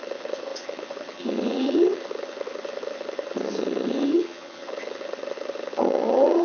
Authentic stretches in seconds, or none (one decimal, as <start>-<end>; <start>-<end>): none